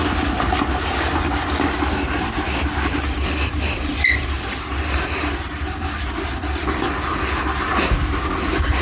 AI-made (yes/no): no